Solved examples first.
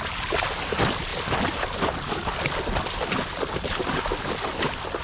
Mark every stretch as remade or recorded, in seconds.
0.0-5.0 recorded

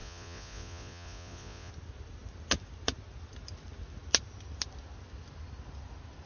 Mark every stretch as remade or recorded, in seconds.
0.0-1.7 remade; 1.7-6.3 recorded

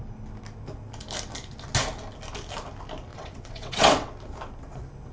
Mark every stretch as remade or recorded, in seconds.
0.0-3.1 recorded; 3.1-4.1 remade; 4.1-5.1 recorded

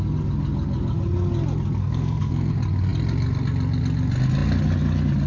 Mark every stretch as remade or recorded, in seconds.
0.0-1.8 recorded; 1.8-2.5 remade; 2.5-5.3 recorded

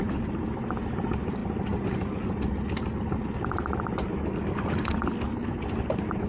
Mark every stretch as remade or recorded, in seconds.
0.0-6.3 recorded

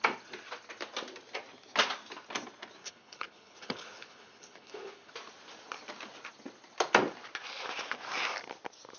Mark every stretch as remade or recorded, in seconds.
0.0-2.8 recorded; 2.8-5.1 remade; 5.1-9.0 recorded

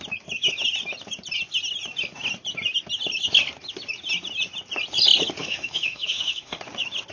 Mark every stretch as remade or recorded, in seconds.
0.0-5.4 recorded; 5.4-6.6 remade; 6.6-7.1 recorded

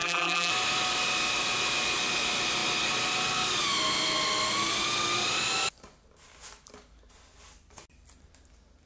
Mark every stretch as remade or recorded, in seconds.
0.0-0.5 remade; 0.5-8.9 recorded